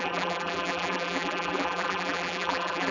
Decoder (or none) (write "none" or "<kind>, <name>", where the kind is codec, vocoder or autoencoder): vocoder, BigVGAN v2